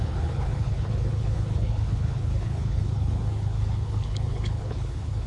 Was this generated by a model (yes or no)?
yes